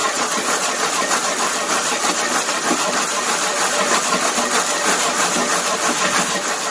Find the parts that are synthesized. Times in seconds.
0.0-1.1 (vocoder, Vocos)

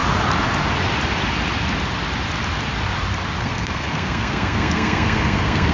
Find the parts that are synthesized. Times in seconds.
3.4-5.7 (codec, SNAC)

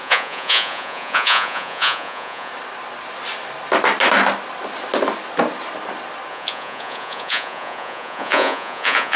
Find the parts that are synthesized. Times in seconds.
0.0-2.5 (vocoder, Vocos); 6.3-9.2

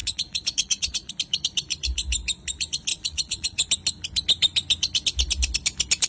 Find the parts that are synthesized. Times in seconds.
0.0-1.1 (vocoder, Vocos); 2.9-3.7

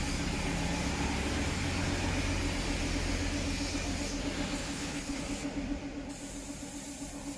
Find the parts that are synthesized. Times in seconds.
4.6-5.2 (codec, HILCodec)

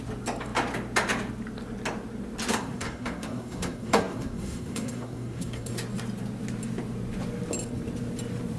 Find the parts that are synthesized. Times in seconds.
2.5-5.7 (codec, SNAC)

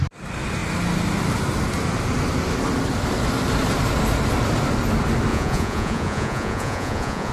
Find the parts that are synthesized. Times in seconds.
5.3-7.3 (vocoder, Vocos)